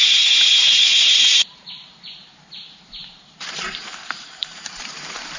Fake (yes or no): yes